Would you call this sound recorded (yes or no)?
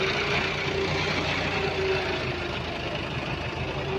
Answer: yes